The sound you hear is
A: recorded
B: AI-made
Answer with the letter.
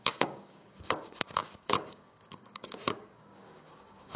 B